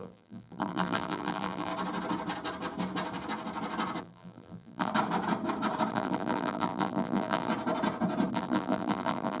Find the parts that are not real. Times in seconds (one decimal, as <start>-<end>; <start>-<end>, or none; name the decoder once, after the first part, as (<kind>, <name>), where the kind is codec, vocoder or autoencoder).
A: 0.0-1.7 (vocoder, BigVGAN v2); 4.0-4.9; 5.9-7.5; 8.3-9.4